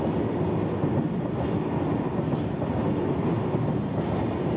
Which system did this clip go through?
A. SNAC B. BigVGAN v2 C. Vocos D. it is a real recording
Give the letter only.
D